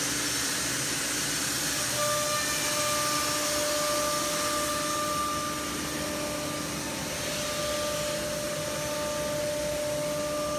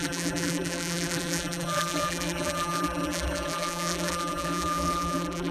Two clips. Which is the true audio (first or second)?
first